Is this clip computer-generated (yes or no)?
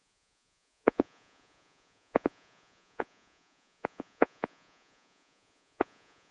yes